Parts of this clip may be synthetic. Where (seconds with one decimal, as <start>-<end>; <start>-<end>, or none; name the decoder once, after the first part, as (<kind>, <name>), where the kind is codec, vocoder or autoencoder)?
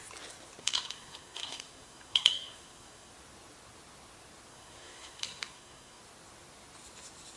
0.6-3.1 (codec, SNAC); 4.5-6.0